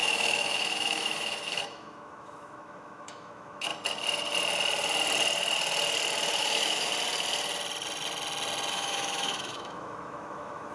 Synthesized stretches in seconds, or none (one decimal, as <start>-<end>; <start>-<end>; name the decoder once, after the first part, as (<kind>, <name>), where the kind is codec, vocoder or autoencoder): 0.0-3.7 (autoencoder, DAC-VAE); 6.4-6.9; 8.7-10.7